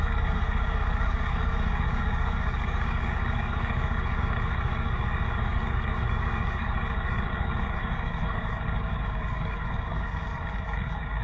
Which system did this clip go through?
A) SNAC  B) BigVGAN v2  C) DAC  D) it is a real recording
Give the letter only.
C